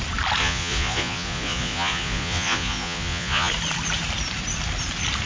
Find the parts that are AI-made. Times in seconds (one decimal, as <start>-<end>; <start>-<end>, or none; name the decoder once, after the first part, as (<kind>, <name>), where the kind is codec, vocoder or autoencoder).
0.4-3.5 (vocoder, Vocos)